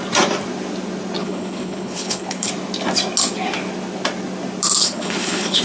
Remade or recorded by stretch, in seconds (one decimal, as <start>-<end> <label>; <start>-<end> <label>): 0.0-1.2 recorded; 1.2-2.5 remade; 2.5-4.8 recorded; 4.8-5.6 remade